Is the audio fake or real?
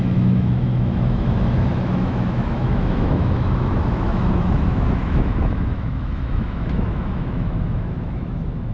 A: fake